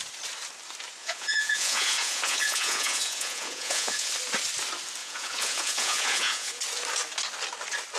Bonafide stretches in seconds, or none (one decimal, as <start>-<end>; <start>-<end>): 0.0-1.0; 4.1-5.0; 6.6-8.0